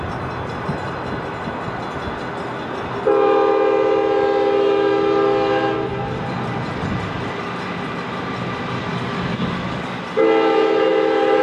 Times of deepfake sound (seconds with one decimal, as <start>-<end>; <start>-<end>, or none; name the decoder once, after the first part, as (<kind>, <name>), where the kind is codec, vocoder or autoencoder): 8.9-10.0 (codec, DAC)